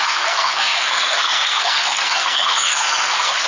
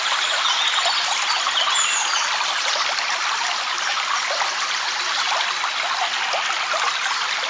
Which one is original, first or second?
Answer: second